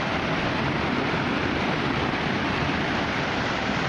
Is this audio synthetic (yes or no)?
yes